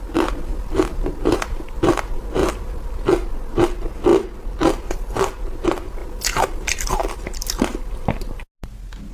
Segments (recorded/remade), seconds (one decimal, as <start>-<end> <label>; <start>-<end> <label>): 0.0-0.5 recorded; 0.5-1.9 remade; 1.9-2.4 recorded; 2.4-3.3 remade; 3.3-4.1 recorded; 4.1-4.9 remade; 4.9-6.0 recorded; 6.0-7.0 remade; 7.0-9.1 recorded